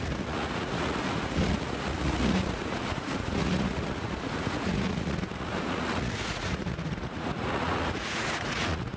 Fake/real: fake